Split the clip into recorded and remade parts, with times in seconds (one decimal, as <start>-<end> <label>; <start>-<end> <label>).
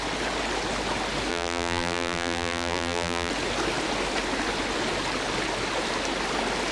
0.0-1.3 recorded; 1.3-3.3 remade; 3.3-6.7 recorded